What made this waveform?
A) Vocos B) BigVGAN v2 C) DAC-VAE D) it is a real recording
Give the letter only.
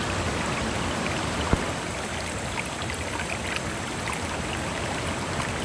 D